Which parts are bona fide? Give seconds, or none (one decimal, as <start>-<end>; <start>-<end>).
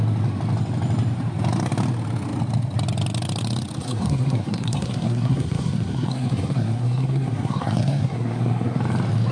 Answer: 0.0-3.8; 8.8-9.3